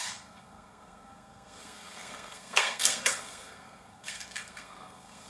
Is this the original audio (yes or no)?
no